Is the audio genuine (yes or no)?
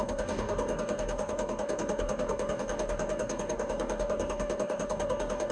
no